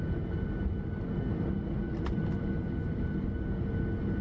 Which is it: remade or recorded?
recorded